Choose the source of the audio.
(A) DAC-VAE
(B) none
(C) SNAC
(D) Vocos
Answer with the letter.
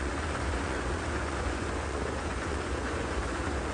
D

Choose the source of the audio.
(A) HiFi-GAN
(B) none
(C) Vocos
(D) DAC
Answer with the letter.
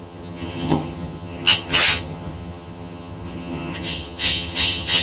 A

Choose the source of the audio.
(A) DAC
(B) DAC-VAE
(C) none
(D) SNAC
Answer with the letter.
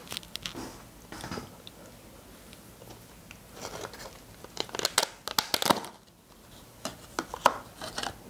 C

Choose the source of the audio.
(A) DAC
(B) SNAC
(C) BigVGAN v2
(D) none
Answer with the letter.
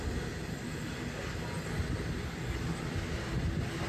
D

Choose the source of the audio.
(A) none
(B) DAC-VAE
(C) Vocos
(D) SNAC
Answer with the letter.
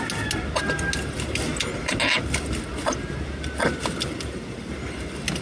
A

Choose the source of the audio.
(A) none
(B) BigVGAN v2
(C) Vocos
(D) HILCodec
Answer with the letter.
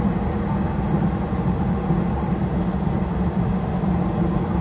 A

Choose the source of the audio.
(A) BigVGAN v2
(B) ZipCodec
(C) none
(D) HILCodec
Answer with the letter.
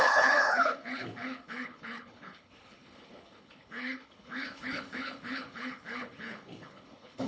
D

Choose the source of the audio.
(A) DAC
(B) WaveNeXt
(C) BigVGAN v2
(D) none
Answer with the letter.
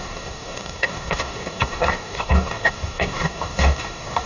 A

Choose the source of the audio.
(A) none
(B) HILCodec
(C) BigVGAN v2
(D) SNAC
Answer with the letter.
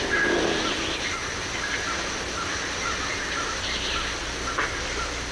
A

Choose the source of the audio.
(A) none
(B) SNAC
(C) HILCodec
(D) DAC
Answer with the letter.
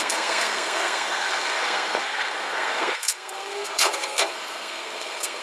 B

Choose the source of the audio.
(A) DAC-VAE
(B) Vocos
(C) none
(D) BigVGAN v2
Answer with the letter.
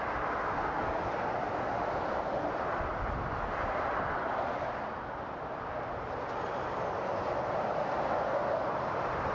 C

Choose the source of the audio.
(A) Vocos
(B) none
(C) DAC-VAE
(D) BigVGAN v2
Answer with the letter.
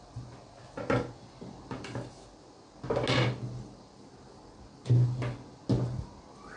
B